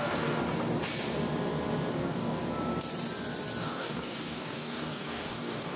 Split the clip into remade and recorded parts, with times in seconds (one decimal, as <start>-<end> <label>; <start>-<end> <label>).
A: 0.0-0.4 remade; 0.4-1.9 recorded; 1.9-2.4 remade; 2.4-3.6 recorded; 3.6-5.8 remade